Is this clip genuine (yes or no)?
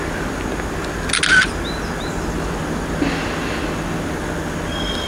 yes